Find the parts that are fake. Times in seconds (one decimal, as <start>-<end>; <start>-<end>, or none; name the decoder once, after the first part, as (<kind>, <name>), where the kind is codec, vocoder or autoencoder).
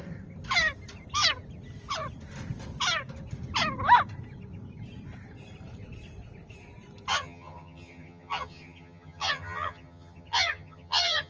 7.1-11.3 (vocoder, HiFi-GAN)